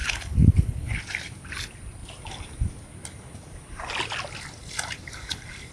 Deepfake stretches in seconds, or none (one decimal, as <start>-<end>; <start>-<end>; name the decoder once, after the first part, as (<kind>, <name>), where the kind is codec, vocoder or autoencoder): 0.0-1.0 (codec, HILCodec)